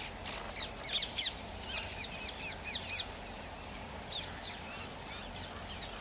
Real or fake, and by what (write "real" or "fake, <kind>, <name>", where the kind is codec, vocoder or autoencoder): real